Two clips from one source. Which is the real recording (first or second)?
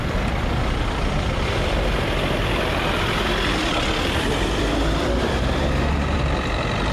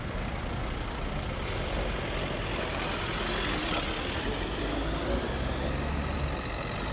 second